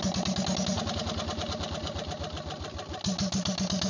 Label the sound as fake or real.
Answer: real